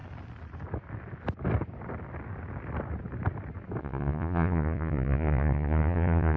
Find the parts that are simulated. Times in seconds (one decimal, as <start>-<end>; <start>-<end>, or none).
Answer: 3.8-6.4